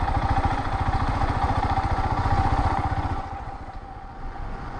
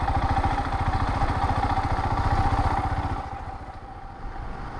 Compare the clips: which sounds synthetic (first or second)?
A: first